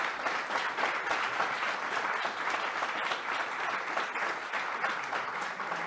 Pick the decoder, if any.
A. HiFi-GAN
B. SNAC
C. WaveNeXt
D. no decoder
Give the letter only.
D